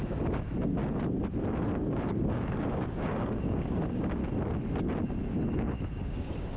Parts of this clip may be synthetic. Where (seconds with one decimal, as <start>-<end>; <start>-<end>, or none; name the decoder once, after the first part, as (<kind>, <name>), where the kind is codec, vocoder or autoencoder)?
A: 0.0-0.8 (codec, DAC); 1.9-4.2; 5.5-6.6